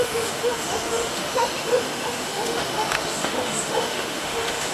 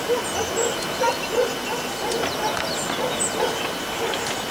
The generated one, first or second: first